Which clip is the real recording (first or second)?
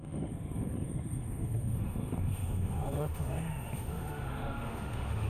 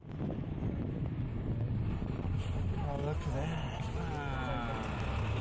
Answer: second